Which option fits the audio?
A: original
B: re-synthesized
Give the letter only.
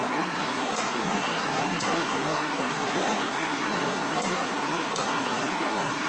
B